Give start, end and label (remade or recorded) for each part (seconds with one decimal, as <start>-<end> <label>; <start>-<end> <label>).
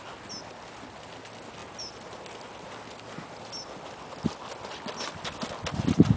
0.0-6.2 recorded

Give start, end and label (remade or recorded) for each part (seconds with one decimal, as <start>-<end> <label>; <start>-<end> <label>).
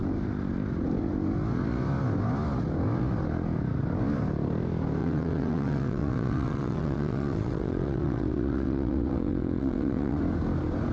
0.0-5.0 recorded; 5.0-10.2 remade; 10.2-10.9 recorded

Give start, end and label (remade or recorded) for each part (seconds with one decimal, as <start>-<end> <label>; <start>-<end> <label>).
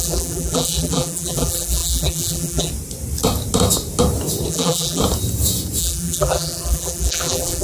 0.0-2.7 remade; 2.7-4.5 recorded; 4.5-5.0 remade; 5.0-5.8 recorded; 5.8-7.6 remade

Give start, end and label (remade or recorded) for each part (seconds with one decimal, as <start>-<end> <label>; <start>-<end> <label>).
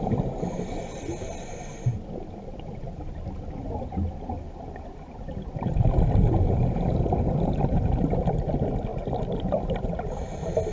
0.0-10.7 recorded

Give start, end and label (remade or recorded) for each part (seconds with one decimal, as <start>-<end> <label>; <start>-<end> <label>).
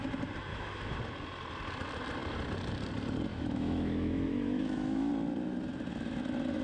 0.0-0.5 recorded; 0.5-1.0 remade; 1.0-3.3 recorded; 3.3-5.1 remade; 5.1-6.6 recorded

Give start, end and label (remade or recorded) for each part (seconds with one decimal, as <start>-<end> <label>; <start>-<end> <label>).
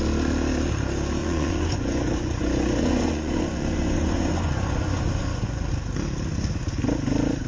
0.0-1.2 recorded; 1.2-5.7 remade; 5.7-7.5 recorded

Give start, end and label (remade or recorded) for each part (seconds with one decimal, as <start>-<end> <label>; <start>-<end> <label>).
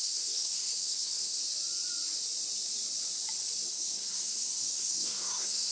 0.0-1.4 remade; 1.4-3.7 recorded; 3.7-5.7 remade